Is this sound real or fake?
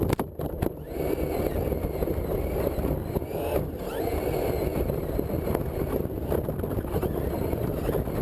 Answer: real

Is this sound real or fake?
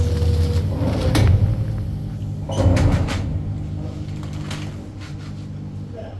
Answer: real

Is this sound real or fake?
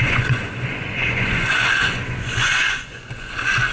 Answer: fake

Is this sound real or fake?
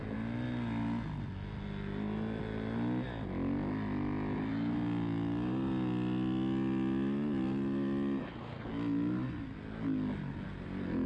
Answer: real